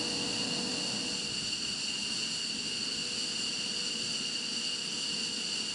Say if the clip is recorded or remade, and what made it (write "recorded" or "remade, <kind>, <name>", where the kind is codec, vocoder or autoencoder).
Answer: recorded